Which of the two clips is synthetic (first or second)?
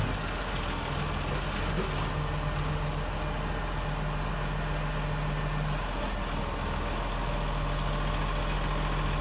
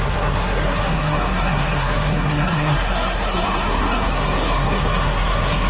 second